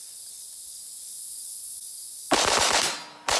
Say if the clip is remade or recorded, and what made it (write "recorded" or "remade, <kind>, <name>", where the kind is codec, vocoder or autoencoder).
recorded